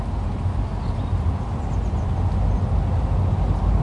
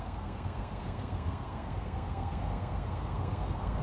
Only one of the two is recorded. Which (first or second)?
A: first